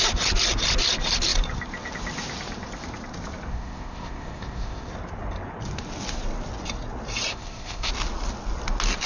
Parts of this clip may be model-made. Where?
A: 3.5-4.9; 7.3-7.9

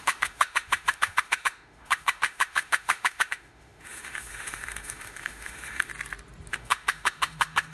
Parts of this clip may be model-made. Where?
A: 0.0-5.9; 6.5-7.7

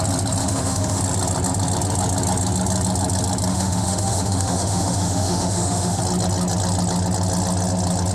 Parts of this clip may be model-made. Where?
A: 0.4-1.0; 3.5-6.0

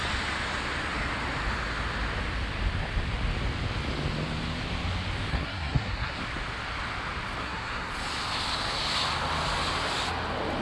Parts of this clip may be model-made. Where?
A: 5.3-6.2; 7.4-7.9

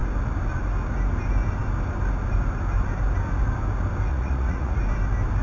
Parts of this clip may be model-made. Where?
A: 4.1-4.8

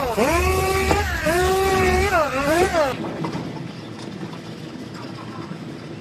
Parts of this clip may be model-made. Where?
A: 0.0-2.7